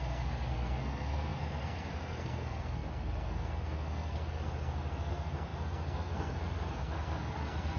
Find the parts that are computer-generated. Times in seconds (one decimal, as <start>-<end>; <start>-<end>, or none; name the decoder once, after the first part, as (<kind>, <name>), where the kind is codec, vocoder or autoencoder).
0.0-7.8 (codec, SNAC)